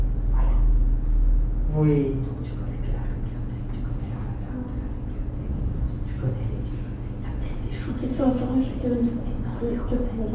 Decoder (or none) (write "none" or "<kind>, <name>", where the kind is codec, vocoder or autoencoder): none